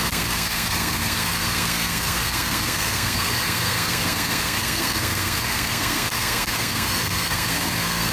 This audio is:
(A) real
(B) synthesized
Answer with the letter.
B